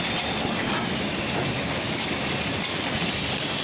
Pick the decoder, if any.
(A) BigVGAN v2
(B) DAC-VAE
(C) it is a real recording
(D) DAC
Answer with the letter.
C